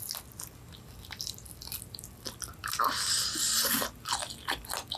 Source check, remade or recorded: recorded